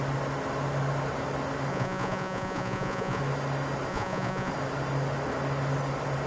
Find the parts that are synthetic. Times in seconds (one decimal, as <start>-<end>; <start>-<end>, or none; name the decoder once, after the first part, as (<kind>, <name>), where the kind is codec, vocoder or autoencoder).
1.7-3.2 (vocoder, Vocos); 3.9-4.5